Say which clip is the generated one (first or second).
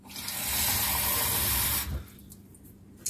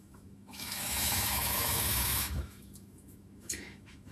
second